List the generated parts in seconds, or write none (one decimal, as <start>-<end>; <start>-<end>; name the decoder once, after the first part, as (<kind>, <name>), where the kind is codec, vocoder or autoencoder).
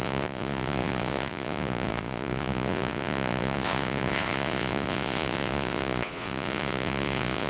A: 0.0-7.5 (vocoder, Vocos)